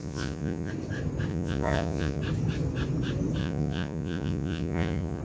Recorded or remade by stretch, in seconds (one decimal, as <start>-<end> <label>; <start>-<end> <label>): 0.0-0.7 remade; 0.7-1.3 recorded; 1.3-2.2 remade; 2.2-3.4 recorded; 3.4-5.2 remade